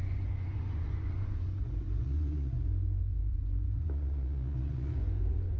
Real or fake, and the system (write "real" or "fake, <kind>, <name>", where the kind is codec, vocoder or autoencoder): fake, vocoder, Vocos